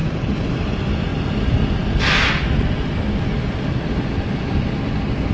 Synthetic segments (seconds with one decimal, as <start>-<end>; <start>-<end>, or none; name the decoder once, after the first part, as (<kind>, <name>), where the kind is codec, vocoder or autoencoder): none